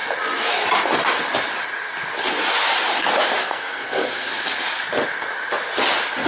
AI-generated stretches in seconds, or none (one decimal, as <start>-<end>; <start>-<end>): 3.4-4.3

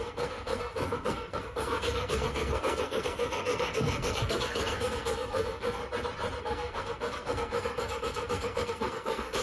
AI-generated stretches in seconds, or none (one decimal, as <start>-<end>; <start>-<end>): 0.0-5.8; 6.4-9.4

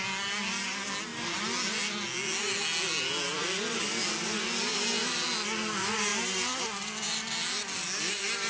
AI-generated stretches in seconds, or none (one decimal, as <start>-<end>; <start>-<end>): none

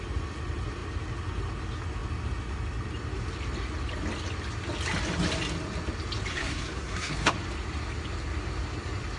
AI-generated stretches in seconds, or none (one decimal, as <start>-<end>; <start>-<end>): 6.3-7.3

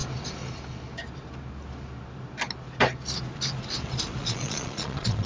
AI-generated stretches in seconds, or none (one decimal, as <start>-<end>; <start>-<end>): 4.2-5.3

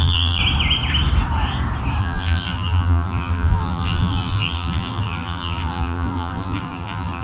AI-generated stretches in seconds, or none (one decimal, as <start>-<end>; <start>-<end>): 0.0-0.4; 2.0-7.2